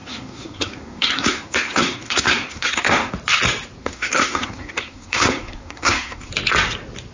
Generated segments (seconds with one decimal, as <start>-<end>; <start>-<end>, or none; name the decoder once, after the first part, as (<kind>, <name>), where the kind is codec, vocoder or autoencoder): 0.0-3.1 (codec, SNAC); 3.8-6.3